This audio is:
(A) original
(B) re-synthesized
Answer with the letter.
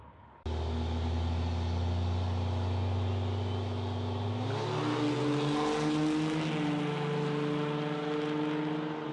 A